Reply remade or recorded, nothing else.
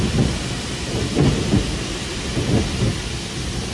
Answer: recorded